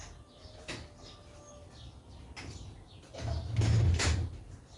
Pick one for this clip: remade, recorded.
recorded